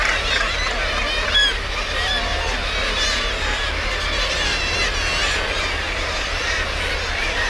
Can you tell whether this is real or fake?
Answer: fake